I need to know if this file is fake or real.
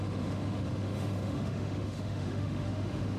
fake